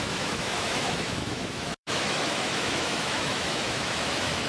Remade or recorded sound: remade